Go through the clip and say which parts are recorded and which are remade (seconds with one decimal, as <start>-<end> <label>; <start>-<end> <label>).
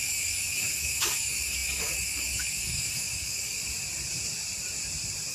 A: 0.0-3.6 remade; 3.6-5.3 recorded